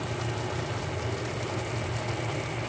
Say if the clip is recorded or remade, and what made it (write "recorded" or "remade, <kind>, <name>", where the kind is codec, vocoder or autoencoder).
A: recorded